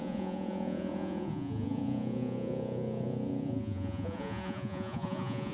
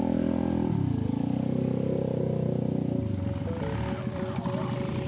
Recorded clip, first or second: second